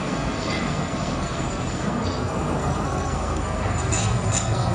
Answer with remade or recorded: remade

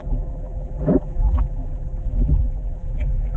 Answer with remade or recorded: remade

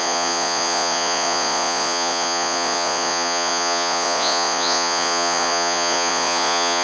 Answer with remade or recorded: remade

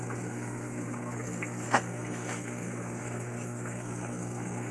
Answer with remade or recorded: remade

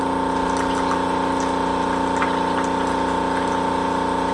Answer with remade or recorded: recorded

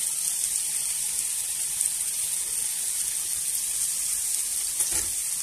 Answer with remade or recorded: recorded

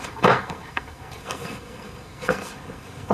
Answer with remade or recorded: remade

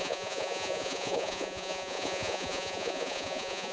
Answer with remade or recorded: remade